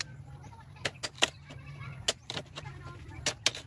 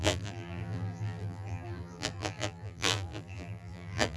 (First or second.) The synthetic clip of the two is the second